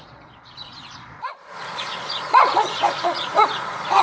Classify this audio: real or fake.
fake